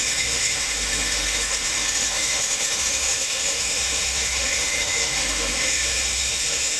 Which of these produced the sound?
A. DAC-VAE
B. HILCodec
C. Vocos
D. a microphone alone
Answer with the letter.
A